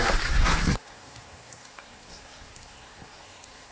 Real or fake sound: fake